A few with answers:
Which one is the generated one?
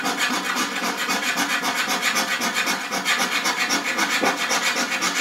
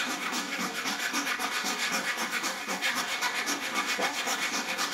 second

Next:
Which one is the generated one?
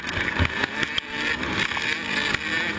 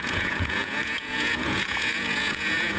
second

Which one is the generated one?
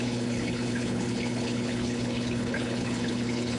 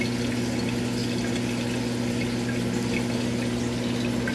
first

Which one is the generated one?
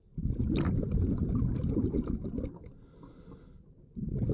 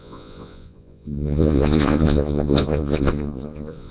second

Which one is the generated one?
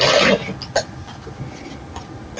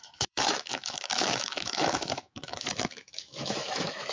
second